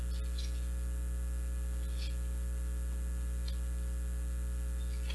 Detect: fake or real real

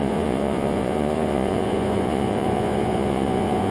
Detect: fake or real fake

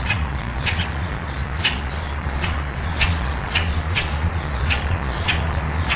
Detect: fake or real fake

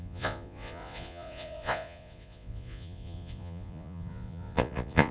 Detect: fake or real fake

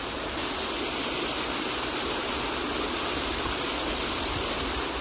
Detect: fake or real real